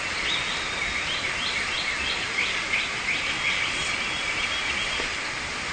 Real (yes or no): yes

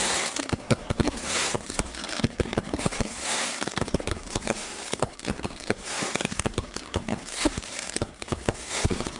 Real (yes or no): no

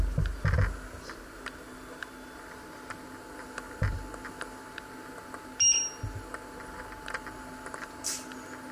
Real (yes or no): yes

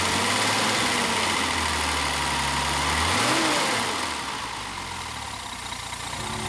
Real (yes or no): yes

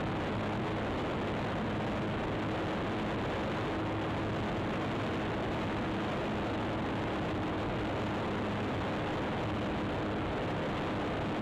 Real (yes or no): yes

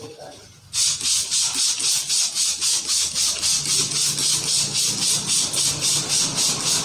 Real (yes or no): yes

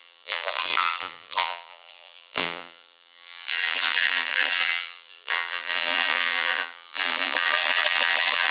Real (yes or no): no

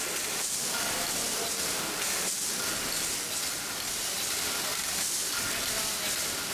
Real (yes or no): yes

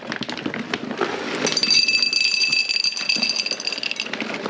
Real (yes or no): yes